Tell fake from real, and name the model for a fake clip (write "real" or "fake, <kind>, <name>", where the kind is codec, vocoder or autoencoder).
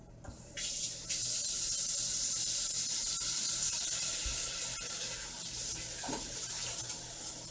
fake, vocoder, BigVGAN v2